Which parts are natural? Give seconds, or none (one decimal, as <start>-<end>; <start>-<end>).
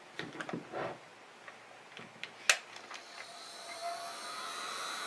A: 0.0-5.1